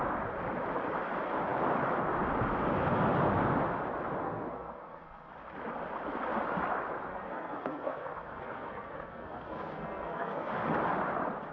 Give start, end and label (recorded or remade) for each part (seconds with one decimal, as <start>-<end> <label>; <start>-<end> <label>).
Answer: 0.0-4.2 recorded; 4.2-5.3 remade; 5.3-7.1 recorded; 7.1-10.5 remade; 10.5-11.5 recorded